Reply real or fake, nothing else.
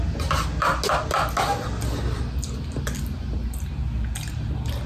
real